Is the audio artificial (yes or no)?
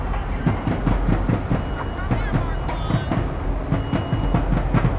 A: no